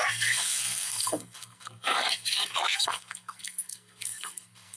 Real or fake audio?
fake